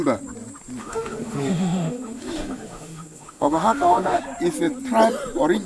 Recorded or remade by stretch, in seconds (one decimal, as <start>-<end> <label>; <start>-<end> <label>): 0.0-0.8 recorded; 0.8-4.2 remade; 4.2-5.7 recorded